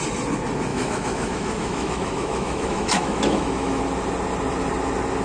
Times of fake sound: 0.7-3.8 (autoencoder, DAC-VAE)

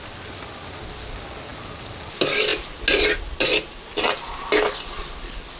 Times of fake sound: none

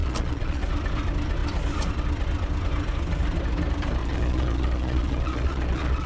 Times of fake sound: 0.0-0.6 (vocoder, Vocos); 4.0-6.1